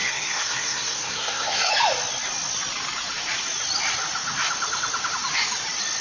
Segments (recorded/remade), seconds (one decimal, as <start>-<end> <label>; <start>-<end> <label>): 0.0-1.7 remade; 1.7-6.0 recorded